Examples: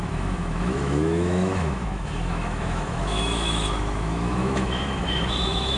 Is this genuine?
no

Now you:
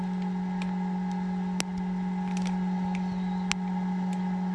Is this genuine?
yes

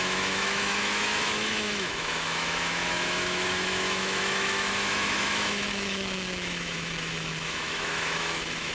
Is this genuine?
no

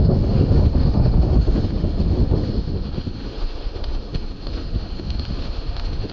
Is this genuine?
no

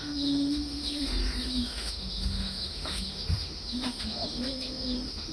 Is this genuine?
no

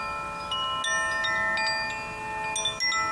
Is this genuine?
yes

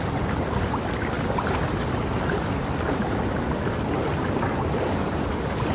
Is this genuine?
yes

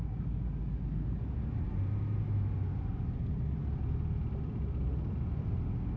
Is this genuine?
yes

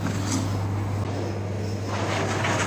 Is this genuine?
yes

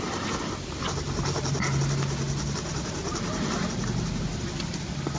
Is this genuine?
yes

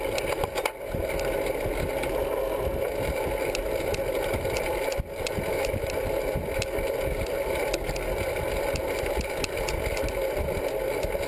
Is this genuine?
yes